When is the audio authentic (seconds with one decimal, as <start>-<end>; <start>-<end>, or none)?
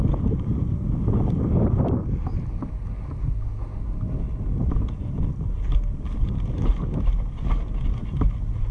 none